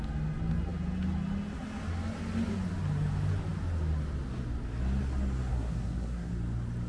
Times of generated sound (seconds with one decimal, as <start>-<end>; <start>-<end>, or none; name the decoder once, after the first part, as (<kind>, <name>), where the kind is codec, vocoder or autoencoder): 5.5-6.3 (codec, SNAC)